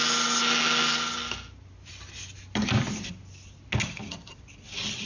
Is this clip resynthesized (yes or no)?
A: no